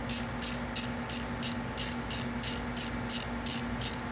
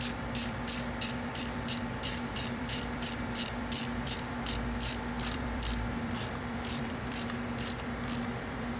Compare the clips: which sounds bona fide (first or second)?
first